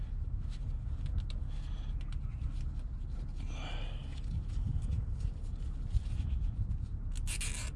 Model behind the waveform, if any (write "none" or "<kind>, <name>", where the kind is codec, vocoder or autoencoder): none